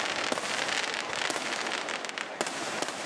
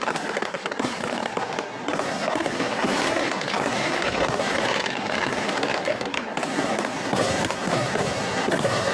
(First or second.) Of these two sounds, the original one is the first